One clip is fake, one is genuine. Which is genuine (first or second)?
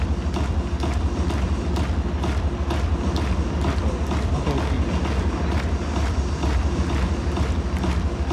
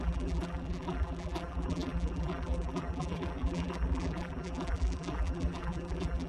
first